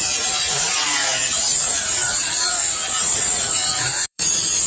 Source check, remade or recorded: remade